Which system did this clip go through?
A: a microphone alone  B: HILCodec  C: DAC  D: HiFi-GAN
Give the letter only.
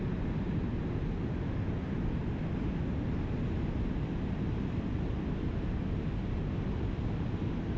A